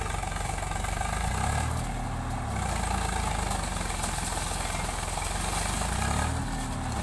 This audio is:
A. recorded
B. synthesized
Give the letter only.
A